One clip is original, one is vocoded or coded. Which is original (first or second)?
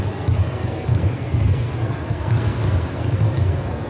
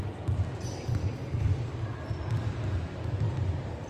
second